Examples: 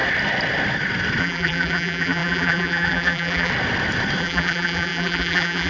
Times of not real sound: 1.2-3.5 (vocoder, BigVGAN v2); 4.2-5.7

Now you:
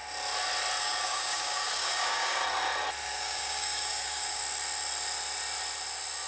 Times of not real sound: 0.8-2.4 (codec, DAC); 3.1-4.4

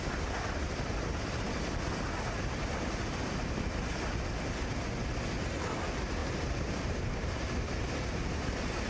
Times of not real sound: 2.6-3.7 (vocoder, BigVGAN v2); 6.2-8.5

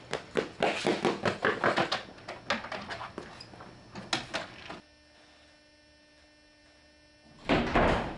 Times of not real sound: none

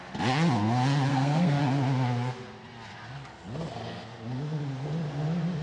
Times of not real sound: 1.1-1.6 (codec, SNAC)